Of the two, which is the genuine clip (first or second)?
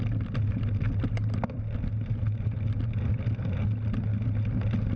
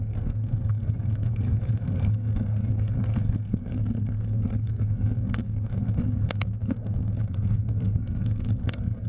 first